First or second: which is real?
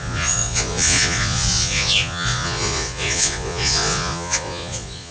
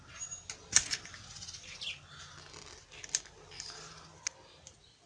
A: second